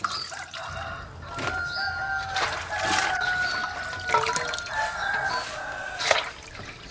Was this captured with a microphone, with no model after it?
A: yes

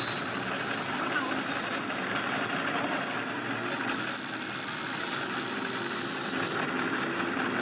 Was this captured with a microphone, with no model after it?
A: yes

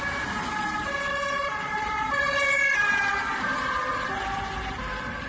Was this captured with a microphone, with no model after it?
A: no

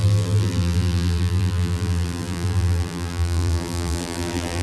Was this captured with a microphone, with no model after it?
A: no